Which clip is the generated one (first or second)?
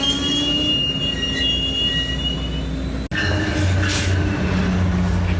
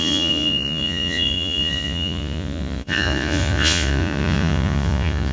second